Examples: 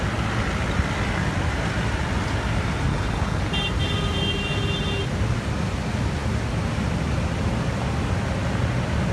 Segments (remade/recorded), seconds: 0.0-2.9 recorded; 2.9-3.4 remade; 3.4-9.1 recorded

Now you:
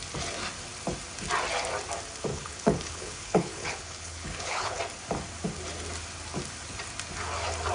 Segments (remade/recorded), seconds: 0.0-2.3 recorded; 2.3-4.8 remade; 4.8-7.7 recorded

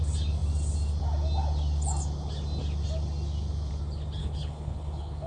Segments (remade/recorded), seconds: 0.0-4.2 recorded; 4.2-5.3 remade

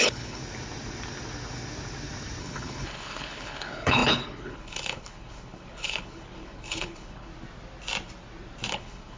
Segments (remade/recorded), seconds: 0.0-0.4 remade; 0.4-2.4 recorded; 2.4-7.3 remade; 7.3-8.7 recorded; 8.7-9.2 remade

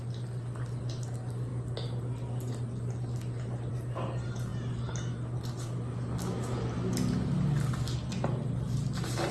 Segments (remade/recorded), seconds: 0.0-9.3 recorded

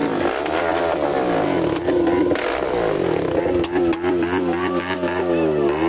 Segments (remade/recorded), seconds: 0.0-5.9 recorded

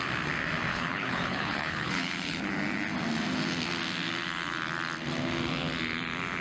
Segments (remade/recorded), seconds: 0.0-0.7 recorded; 0.7-2.5 remade; 2.5-6.4 recorded